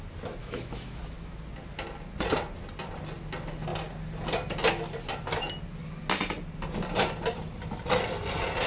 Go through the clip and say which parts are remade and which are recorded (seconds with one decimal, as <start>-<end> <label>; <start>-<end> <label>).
0.0-0.4 recorded; 0.4-1.0 remade; 1.0-8.7 recorded